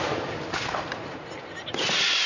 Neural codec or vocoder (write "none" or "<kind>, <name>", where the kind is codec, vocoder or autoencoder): none